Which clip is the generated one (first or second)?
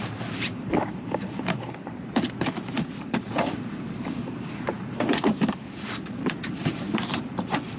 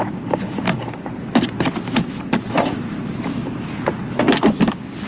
first